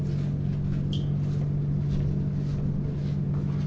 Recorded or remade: recorded